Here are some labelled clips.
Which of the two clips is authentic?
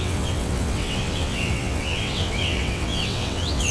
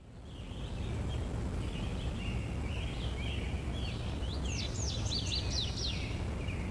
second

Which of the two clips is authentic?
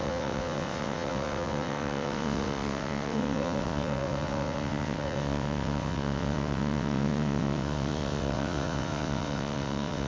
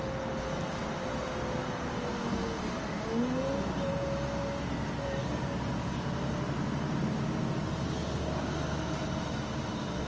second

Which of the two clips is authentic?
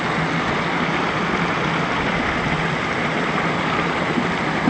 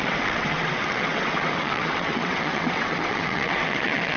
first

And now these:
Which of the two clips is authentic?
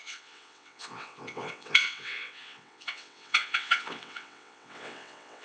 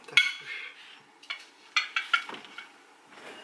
second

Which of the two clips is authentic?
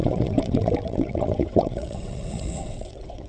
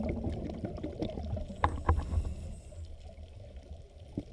second